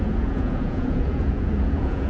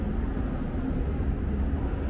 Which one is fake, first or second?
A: first